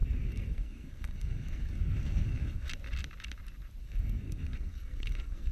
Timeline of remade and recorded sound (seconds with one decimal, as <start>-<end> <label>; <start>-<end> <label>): 0.0-2.7 remade; 2.7-3.8 recorded; 3.8-5.5 remade

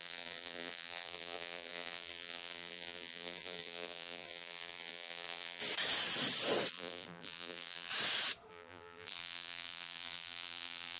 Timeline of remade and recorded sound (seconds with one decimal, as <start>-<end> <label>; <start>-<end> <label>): 0.0-5.6 remade; 5.6-6.7 recorded; 6.7-7.9 remade; 7.9-8.5 recorded; 8.5-11.0 remade

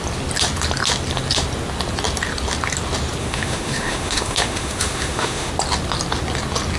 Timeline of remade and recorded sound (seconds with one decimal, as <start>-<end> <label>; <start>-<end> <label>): 0.0-3.2 recorded; 3.2-5.5 remade; 5.5-6.8 recorded

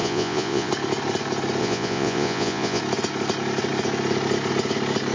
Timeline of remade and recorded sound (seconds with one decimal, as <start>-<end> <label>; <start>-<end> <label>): 0.0-0.7 remade; 0.7-1.6 recorded; 1.6-2.8 remade; 2.8-5.1 recorded

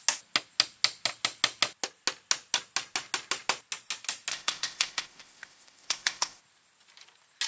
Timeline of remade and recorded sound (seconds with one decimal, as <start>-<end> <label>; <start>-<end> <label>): 0.0-4.3 recorded; 4.3-6.4 remade; 6.4-7.5 recorded

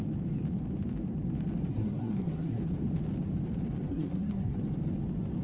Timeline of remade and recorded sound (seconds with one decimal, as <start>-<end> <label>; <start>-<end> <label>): 0.0-1.7 recorded; 1.7-2.6 remade; 2.6-3.9 recorded; 3.9-4.6 remade; 4.6-5.4 recorded

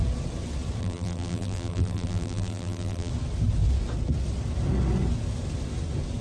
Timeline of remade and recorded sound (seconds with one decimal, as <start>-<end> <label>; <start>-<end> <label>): 0.0-0.8 recorded; 0.8-3.1 remade; 3.1-6.2 recorded

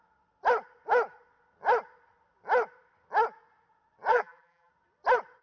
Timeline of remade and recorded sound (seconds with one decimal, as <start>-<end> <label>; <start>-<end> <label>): 0.0-4.1 recorded; 4.1-4.7 remade; 4.7-5.4 recorded